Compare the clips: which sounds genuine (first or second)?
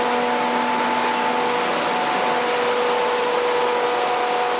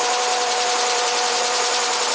first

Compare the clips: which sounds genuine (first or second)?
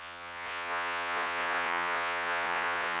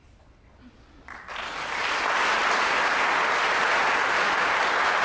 second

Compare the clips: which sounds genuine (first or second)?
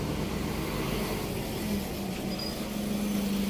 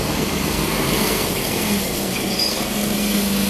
first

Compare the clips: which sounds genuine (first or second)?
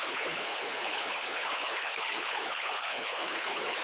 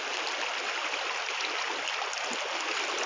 second